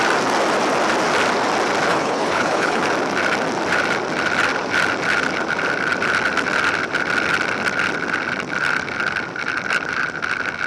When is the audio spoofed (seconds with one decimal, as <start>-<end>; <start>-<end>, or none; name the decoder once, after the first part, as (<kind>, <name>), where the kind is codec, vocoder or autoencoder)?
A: 1.9-2.8 (codec, HILCodec)